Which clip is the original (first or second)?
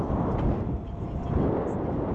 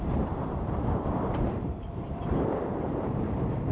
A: first